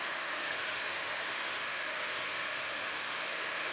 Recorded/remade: remade